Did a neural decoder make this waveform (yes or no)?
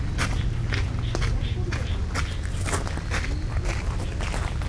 no